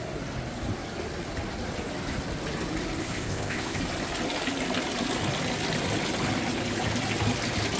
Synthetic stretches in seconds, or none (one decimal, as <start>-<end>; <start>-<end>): 3.0-3.8